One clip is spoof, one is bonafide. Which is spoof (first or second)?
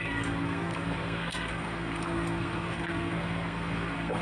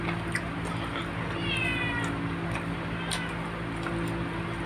first